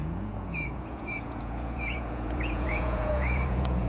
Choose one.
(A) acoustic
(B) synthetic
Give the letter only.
B